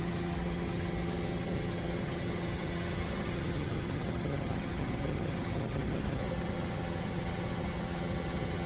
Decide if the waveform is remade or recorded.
remade